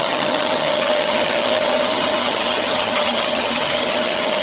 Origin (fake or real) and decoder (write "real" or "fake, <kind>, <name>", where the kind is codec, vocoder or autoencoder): fake, vocoder, HiFi-GAN